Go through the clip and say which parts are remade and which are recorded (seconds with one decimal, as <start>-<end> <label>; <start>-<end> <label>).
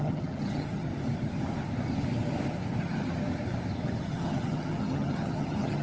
0.0-0.9 remade; 0.9-2.8 recorded; 2.8-3.2 remade; 3.2-4.0 recorded; 4.0-5.8 remade